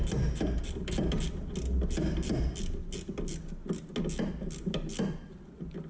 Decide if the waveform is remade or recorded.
recorded